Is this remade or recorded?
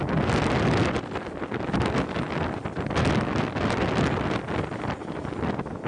recorded